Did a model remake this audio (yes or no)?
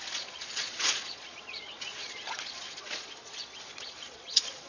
yes